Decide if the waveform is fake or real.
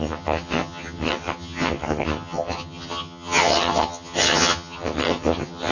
fake